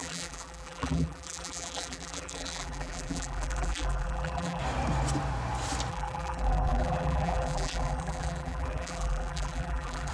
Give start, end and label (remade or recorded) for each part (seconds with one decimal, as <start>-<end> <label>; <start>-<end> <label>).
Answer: 0.0-4.6 remade; 4.6-5.9 recorded; 5.9-10.1 remade